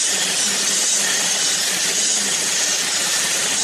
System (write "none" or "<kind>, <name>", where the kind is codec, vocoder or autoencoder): none